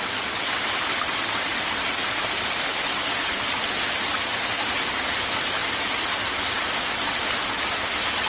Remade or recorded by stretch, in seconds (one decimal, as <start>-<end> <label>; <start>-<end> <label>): 0.0-8.3 recorded